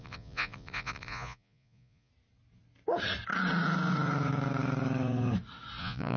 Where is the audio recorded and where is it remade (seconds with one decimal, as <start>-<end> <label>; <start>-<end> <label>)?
0.0-2.1 remade; 2.1-5.8 recorded; 5.8-6.2 remade